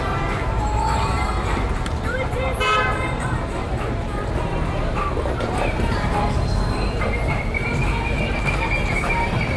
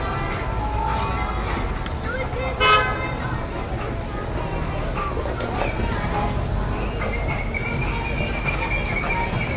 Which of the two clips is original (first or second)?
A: second